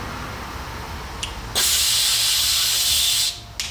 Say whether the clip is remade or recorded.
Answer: recorded